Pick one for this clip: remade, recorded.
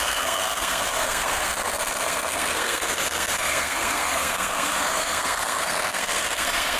remade